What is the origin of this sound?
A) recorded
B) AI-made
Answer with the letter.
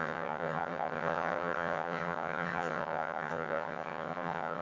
B